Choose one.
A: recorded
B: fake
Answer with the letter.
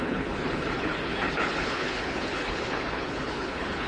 B